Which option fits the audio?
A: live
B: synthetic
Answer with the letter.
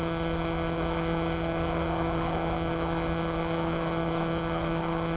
B